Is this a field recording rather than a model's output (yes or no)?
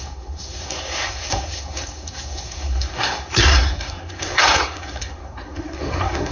no